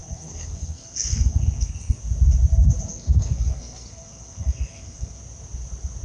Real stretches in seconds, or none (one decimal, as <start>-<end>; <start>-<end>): 2.0-2.9; 5.2-6.0